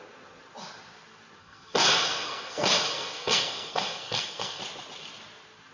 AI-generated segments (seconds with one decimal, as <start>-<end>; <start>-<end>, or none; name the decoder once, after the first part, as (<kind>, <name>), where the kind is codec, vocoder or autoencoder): 1.4-4.6 (codec, SNAC)